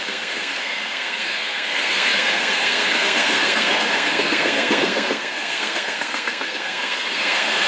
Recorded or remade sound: remade